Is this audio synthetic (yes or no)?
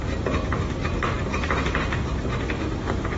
no